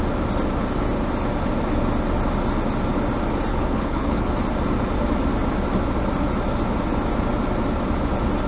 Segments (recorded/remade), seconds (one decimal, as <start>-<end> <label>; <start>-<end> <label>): 0.0-3.5 recorded; 3.5-4.3 remade; 4.3-8.5 recorded